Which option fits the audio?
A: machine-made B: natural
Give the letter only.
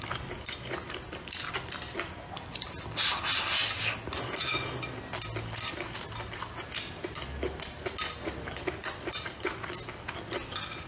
B